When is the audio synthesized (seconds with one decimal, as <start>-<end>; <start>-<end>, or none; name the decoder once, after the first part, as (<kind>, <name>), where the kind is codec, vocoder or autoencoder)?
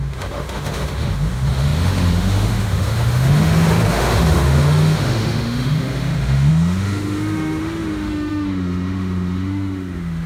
0.0-10.3 (autoencoder, DAC-VAE)